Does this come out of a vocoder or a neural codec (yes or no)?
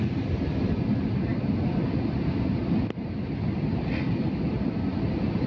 no